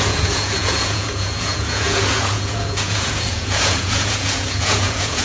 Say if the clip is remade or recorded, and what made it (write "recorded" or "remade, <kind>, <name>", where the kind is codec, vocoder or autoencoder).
remade, vocoder, Vocos